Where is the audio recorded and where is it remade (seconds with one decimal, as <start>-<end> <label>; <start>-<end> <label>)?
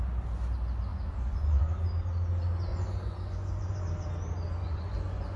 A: 0.0-0.9 recorded; 0.9-1.6 remade; 1.6-2.7 recorded; 2.7-3.8 remade; 3.8-4.6 recorded; 4.6-5.4 remade